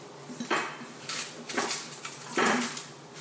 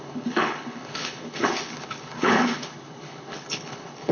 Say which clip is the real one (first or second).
first